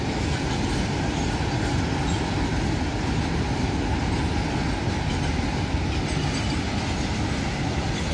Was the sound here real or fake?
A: real